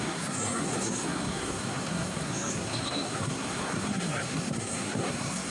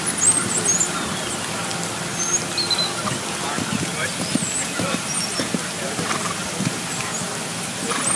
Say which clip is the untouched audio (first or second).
second